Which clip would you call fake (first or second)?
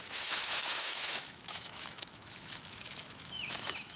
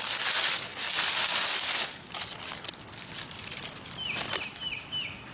first